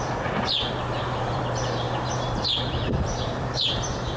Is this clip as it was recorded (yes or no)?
no